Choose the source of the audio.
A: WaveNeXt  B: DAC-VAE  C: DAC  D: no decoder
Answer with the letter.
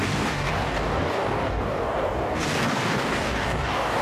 C